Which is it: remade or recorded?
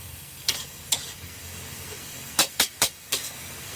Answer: remade